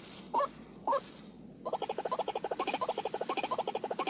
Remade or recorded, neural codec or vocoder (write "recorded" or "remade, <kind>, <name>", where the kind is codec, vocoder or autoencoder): recorded